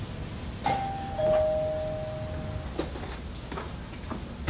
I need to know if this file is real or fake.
real